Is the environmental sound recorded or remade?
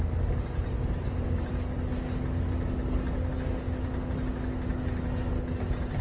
recorded